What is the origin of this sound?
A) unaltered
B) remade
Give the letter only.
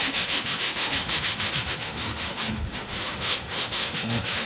B